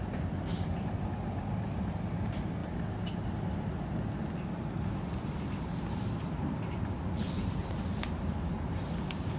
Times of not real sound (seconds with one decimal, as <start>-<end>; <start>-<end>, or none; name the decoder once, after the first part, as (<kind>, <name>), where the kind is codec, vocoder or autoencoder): none